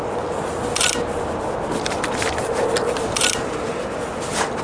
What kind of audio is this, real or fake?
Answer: real